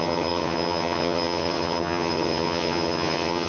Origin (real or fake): fake